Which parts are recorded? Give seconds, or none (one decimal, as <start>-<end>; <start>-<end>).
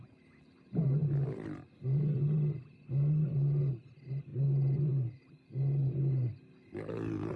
0.0-4.3; 5.3-7.4